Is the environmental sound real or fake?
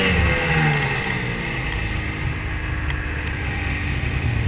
real